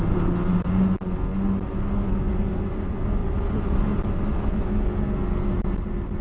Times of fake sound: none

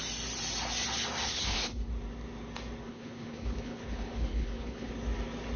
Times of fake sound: 1.3-1.9; 2.8-4.9

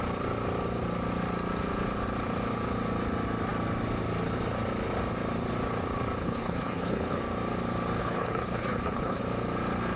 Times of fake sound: 6.2-7.2; 8.0-9.2

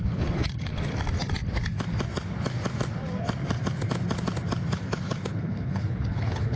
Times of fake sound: 0.0-0.7; 4.7-6.6

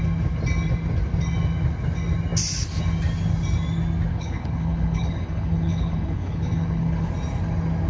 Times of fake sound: 4.1-7.1

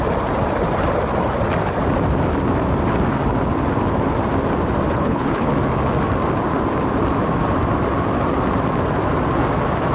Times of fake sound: 4.9-5.5

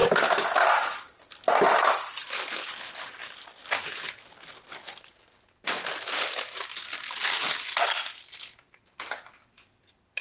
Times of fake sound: none